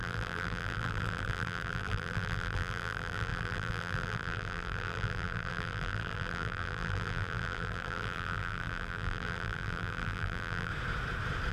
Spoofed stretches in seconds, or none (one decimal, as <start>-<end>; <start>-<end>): 0.0-10.7